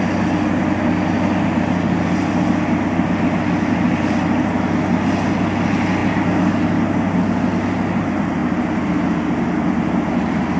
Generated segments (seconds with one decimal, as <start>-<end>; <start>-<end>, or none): none

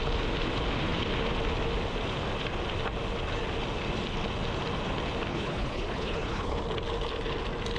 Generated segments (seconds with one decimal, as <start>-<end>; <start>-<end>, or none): 5.3-6.6

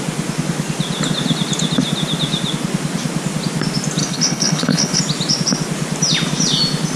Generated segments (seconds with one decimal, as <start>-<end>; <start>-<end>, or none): 4.0-5.0

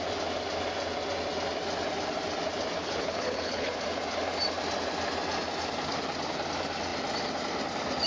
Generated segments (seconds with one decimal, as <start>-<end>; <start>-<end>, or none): 2.8-3.7

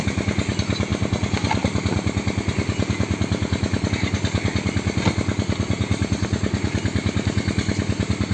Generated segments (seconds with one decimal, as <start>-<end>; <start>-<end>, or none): none

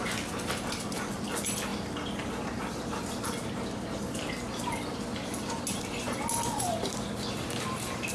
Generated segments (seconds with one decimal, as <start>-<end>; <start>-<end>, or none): none

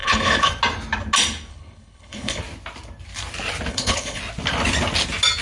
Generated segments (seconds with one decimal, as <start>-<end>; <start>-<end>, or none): 0.0-0.5; 1.5-2.4; 3.7-4.2

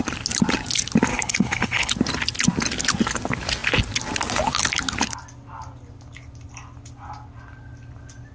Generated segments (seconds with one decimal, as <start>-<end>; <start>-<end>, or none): 1.1-1.9